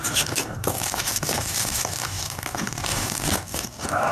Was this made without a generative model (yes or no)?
no